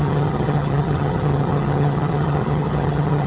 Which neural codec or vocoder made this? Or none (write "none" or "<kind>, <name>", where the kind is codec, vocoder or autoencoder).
vocoder, HiFi-GAN